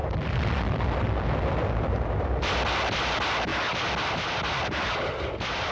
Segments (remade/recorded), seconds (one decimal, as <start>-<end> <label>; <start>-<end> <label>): 0.0-5.7 remade